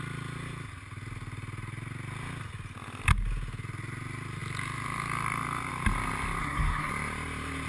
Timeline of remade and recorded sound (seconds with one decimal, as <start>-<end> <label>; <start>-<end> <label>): 0.0-6.4 recorded; 6.4-6.9 remade; 6.9-7.7 recorded